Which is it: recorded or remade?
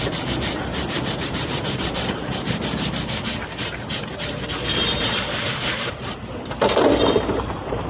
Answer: remade